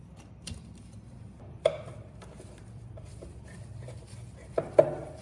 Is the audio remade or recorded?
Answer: remade